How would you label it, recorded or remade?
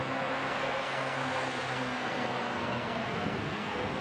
remade